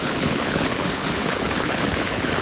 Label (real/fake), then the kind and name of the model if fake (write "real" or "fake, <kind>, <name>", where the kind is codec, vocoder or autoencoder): fake, codec, HILCodec